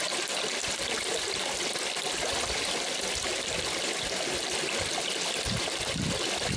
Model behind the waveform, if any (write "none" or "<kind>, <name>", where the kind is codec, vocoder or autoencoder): none